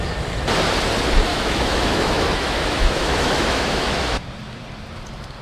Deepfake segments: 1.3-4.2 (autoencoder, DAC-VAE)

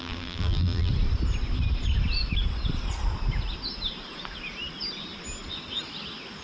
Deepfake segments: 0.0-0.9 (vocoder, BigVGAN v2)

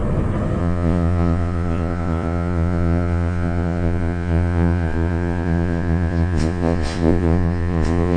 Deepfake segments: 0.6-8.2 (vocoder, Vocos)

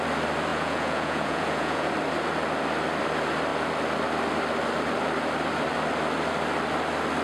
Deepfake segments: 0.5-1.9 (vocoder, Vocos)

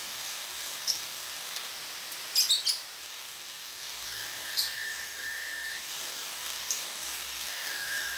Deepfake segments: 0.0-1.7 (codec, DAC); 3.0-8.2

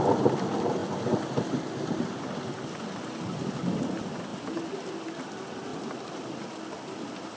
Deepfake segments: none

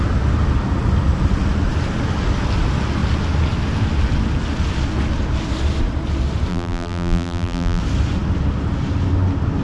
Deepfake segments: 6.5-7.8 (vocoder, BigVGAN v2)